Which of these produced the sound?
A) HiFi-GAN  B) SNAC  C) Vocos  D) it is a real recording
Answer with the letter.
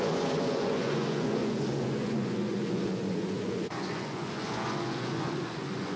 C